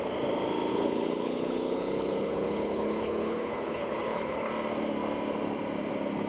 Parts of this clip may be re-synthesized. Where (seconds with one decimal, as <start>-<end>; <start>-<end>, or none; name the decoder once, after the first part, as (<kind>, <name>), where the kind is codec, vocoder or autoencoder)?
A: 0.7-4.5 (codec, HILCodec)